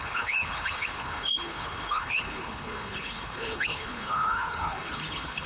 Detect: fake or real fake